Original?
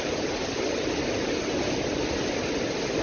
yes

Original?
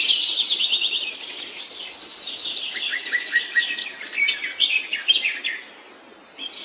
yes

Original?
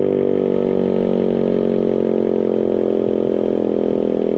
yes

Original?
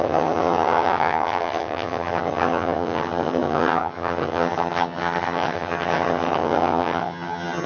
no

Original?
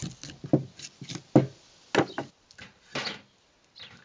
yes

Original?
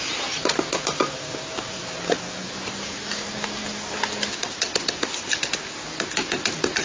yes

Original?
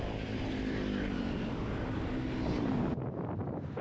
yes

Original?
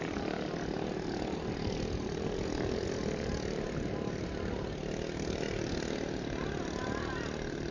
yes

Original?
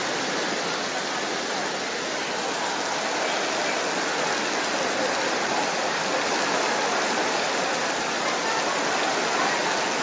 yes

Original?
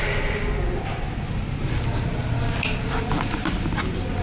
yes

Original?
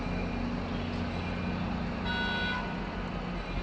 yes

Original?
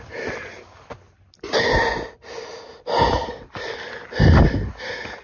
yes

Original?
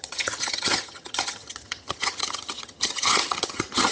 no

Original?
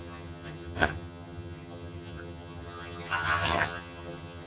no